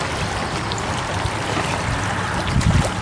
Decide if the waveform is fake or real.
real